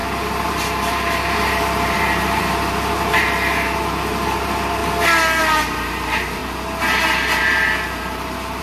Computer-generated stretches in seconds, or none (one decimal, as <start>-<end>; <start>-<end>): 0.0-4.8; 5.4-6.4; 7.4-8.6